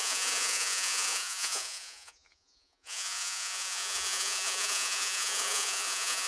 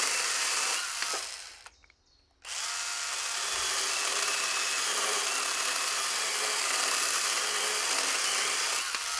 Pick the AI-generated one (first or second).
first